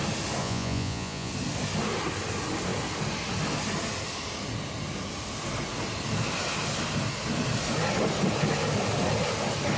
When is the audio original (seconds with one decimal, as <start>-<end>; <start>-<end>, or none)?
0.0-0.4; 1.3-9.8

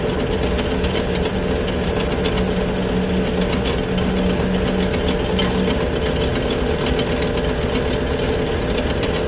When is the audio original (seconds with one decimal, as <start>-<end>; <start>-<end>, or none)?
0.0-9.3